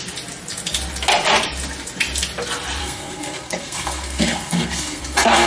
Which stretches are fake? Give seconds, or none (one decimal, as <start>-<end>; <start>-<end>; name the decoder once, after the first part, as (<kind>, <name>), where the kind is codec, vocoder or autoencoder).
2.8-5.5 (codec, SNAC)